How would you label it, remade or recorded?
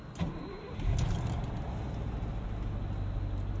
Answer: recorded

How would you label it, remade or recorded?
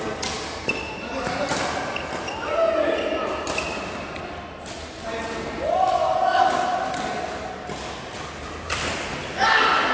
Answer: recorded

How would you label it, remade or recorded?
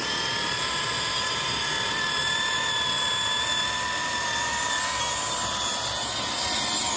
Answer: recorded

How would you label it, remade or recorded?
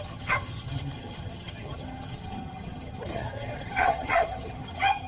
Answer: remade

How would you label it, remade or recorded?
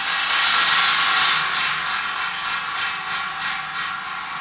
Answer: recorded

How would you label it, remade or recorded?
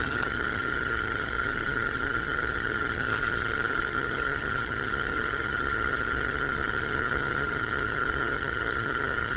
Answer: remade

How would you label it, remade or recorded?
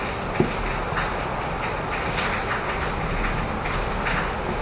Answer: recorded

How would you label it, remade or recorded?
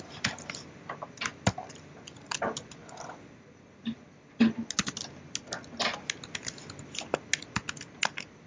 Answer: recorded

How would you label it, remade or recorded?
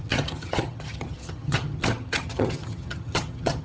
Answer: remade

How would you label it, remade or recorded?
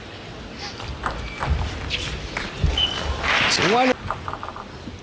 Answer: recorded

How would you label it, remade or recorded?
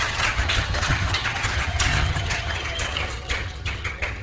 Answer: remade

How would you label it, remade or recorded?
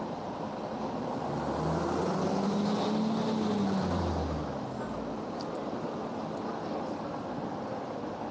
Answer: recorded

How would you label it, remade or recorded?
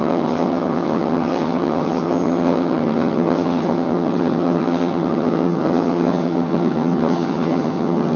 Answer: remade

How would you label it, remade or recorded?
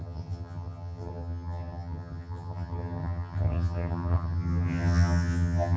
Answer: remade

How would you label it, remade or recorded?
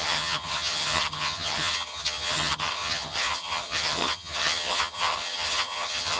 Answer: remade